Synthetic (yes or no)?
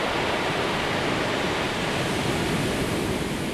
no